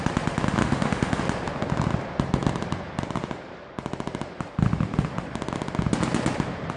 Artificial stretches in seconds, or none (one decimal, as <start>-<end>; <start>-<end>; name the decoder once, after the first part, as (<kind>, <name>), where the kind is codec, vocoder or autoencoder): 0.6-1.2 (autoencoder, DAC-VAE)